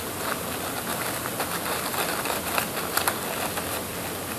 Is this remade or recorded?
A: recorded